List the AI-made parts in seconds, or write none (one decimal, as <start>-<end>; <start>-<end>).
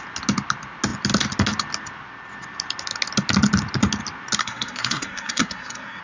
4.4-6.0